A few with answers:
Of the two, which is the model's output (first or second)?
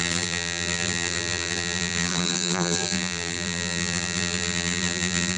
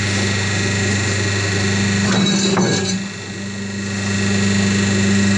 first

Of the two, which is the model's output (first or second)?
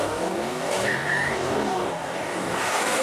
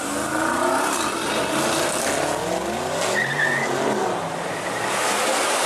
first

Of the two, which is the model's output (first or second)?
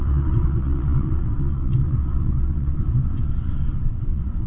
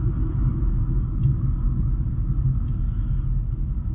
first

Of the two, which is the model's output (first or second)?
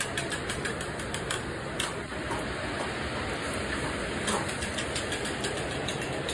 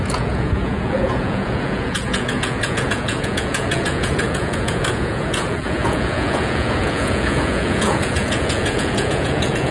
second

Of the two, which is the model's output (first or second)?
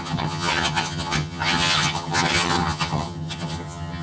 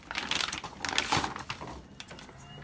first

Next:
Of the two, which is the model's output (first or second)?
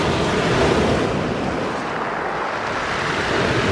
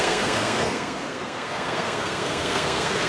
second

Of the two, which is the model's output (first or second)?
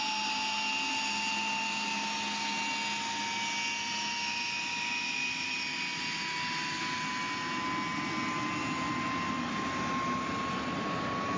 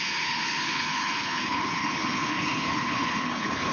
second